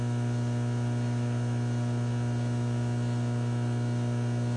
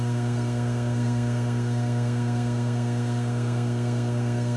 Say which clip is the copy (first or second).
second